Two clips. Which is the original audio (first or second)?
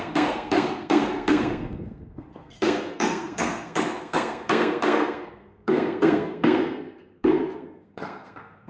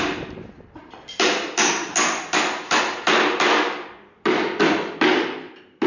second